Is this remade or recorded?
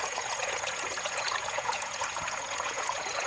remade